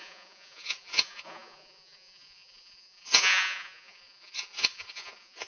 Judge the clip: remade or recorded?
remade